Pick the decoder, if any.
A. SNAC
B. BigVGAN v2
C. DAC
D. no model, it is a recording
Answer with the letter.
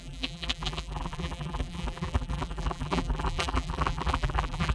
B